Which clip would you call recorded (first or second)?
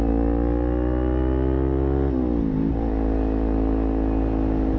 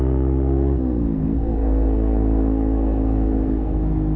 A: first